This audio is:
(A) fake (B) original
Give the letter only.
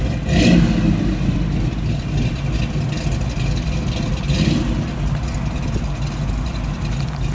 B